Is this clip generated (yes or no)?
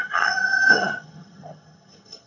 yes